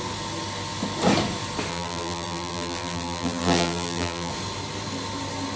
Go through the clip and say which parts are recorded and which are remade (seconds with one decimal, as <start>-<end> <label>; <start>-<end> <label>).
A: 0.0-1.7 recorded; 1.7-4.3 remade; 4.3-5.6 recorded